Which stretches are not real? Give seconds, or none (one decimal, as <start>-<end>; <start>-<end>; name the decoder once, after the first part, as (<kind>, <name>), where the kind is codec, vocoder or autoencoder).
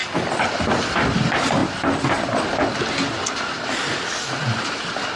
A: none